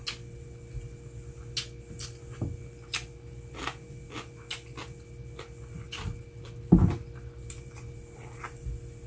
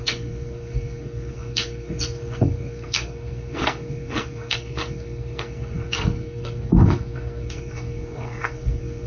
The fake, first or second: second